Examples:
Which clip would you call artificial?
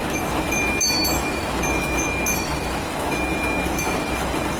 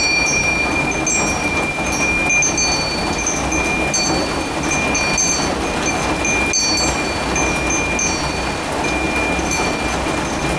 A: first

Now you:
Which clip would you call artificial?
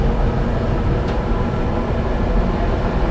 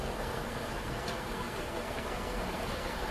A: second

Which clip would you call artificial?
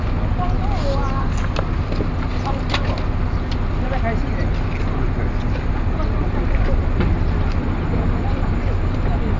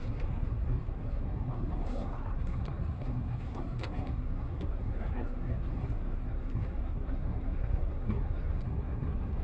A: second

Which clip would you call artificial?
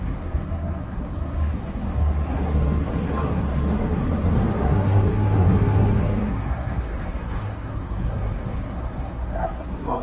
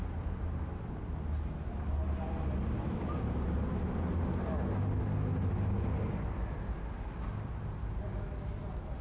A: first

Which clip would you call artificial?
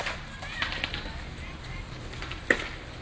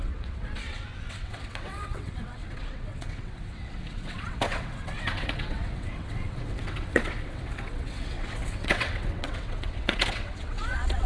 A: second